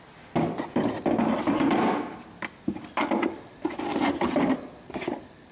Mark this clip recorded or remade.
recorded